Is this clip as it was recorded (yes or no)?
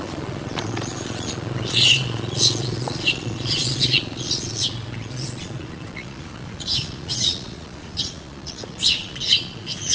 no